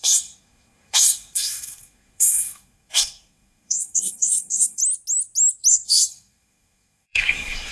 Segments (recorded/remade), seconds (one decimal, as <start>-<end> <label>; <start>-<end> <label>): 0.0-4.8 remade; 4.8-5.7 recorded; 5.7-7.7 remade